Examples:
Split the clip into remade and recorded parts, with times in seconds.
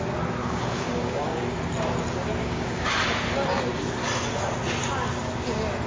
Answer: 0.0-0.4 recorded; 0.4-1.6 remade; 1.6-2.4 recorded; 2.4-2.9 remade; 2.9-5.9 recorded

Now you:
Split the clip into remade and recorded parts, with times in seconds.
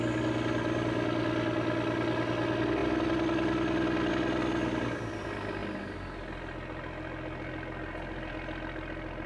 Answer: 0.0-9.3 recorded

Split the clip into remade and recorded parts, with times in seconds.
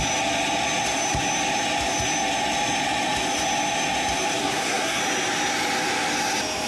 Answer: 0.0-4.4 recorded; 4.4-5.0 remade; 5.0-6.7 recorded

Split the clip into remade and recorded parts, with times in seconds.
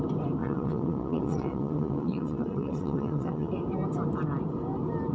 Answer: 0.0-0.4 recorded; 0.4-3.5 remade; 3.5-5.1 recorded